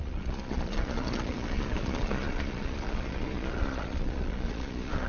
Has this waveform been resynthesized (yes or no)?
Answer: yes